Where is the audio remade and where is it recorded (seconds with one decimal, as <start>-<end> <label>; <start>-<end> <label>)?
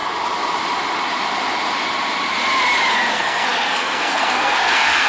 0.0-3.1 recorded; 3.1-5.1 remade